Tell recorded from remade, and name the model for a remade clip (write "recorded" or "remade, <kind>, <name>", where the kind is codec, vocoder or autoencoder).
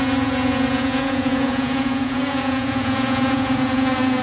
remade, vocoder, Vocos